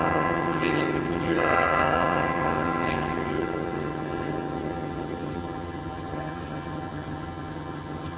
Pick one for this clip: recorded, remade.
remade